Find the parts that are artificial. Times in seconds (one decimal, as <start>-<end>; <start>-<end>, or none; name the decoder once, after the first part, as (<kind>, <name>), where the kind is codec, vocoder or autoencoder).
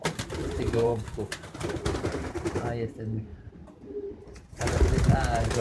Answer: 0.4-0.9 (vocoder, BigVGAN v2); 3.3-5.6